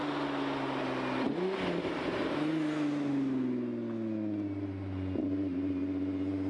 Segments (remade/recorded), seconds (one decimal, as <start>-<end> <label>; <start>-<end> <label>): 0.0-6.5 recorded